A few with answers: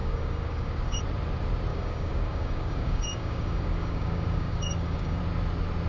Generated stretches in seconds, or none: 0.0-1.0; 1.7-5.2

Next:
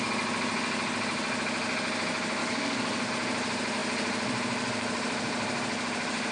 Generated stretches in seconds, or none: 2.4-3.1

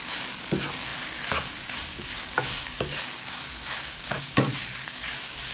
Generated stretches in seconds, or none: 0.0-5.5

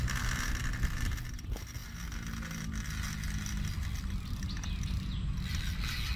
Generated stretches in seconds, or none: none

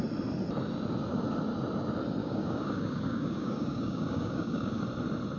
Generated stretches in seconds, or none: 2.2-4.8

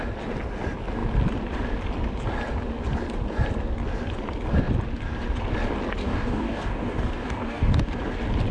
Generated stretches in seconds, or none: 6.0-8.0

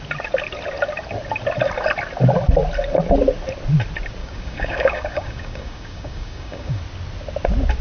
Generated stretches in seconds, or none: 4.2-6.8

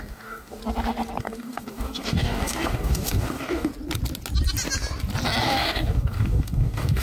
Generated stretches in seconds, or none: 0.0-0.6; 1.2-3.7; 5.4-7.0